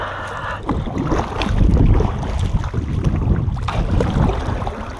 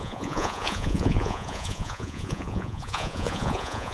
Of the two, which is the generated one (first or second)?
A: second